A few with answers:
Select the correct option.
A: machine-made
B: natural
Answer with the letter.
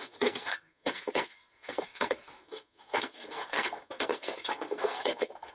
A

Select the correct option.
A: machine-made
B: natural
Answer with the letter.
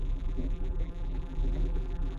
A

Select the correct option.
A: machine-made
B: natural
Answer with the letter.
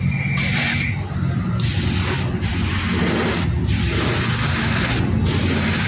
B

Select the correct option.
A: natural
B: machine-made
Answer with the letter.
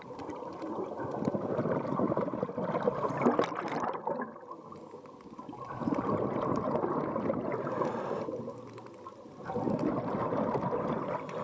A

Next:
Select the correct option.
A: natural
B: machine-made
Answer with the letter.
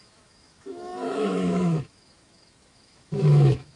B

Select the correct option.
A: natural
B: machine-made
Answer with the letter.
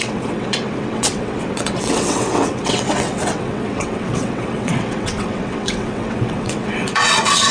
B